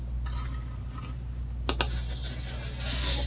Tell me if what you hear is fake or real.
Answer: real